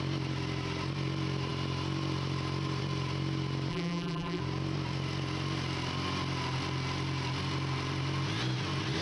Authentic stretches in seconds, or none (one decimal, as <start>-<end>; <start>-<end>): 0.0-3.7; 4.4-9.0